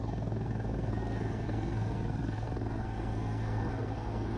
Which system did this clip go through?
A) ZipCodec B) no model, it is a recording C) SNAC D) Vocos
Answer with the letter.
C